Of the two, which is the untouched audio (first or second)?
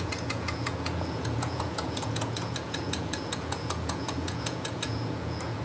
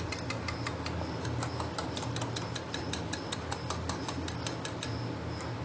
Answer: second